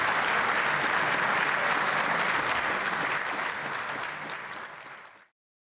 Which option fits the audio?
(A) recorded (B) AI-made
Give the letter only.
A